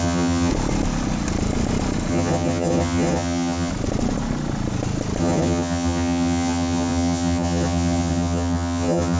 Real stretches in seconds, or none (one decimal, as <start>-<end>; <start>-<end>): 0.5-2.1; 3.7-5.2